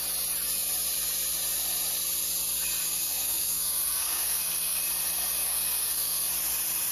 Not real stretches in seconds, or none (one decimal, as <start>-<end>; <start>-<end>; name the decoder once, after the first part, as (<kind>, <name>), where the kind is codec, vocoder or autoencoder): 2.8-4.8 (codec, SNAC); 5.4-6.3